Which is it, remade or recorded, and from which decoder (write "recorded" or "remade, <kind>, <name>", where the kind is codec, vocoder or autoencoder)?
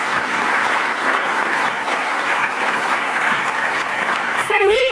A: remade, codec, SNAC